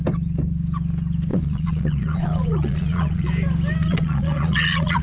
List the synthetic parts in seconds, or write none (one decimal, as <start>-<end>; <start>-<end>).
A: 1.3-3.3; 3.8-5.0